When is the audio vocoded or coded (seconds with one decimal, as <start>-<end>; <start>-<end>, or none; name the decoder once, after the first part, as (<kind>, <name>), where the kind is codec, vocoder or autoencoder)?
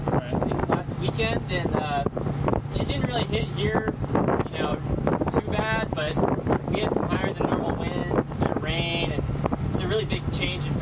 none